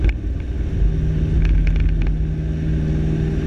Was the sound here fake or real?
real